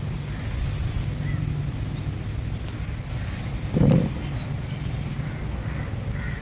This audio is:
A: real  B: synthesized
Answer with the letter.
A